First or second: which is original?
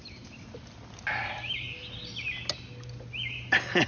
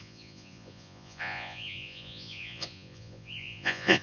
first